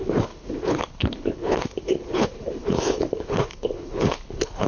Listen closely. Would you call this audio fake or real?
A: fake